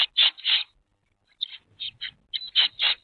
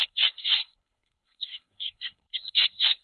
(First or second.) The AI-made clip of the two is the second